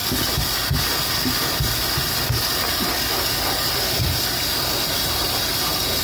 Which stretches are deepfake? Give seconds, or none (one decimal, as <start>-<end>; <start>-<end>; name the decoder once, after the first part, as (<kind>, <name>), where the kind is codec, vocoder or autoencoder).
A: none